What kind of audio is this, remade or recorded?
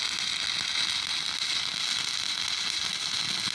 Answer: recorded